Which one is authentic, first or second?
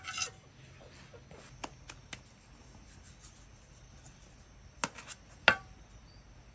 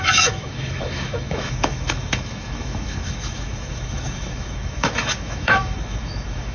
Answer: first